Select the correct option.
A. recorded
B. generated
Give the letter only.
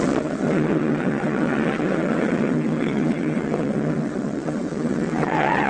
B